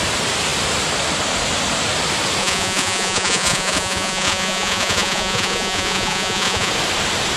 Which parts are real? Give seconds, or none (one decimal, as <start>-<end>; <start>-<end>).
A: 0.0-2.4; 6.7-7.4